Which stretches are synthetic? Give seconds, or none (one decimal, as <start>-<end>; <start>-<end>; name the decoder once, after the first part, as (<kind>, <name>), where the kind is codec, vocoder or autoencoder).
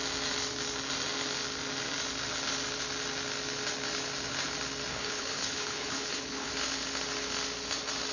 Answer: 4.9-6.5 (codec, HILCodec)